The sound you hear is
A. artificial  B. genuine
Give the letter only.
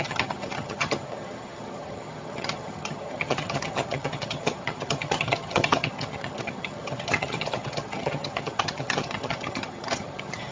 A